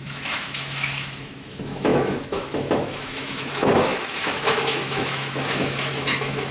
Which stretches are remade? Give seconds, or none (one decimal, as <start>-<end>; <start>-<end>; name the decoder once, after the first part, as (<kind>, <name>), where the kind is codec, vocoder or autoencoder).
0.0-6.5 (autoencoder, DAC-VAE)